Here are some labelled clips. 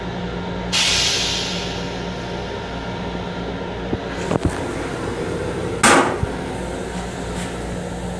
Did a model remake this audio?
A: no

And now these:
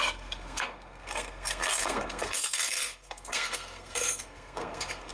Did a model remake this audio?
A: yes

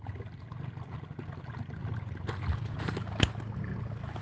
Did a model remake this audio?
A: no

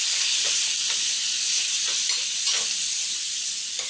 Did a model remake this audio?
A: no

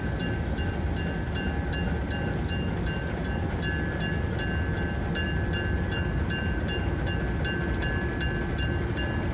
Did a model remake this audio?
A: no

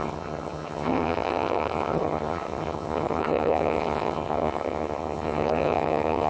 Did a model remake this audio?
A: yes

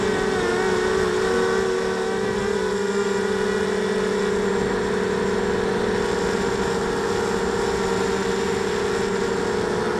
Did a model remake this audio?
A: no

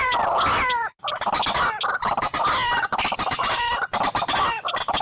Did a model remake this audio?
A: no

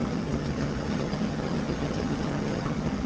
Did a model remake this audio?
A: yes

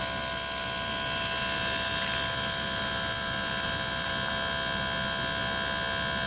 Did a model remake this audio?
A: no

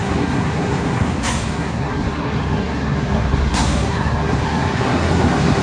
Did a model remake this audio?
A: yes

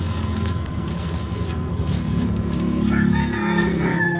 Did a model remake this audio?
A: yes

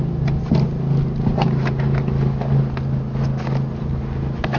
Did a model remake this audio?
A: no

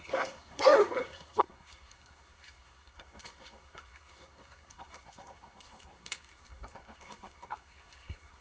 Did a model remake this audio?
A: yes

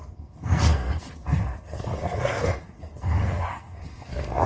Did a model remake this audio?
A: yes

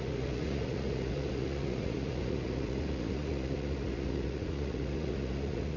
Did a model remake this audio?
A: yes